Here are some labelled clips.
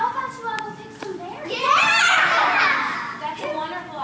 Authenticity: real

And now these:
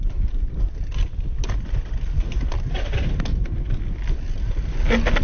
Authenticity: real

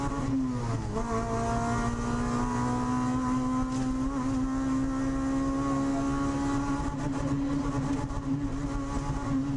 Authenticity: real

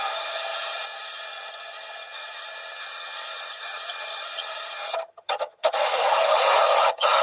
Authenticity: fake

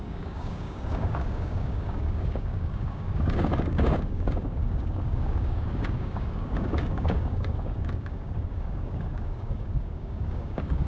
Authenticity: fake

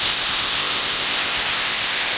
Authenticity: fake